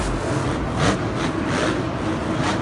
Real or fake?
real